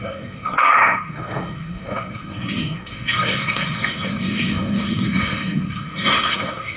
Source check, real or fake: fake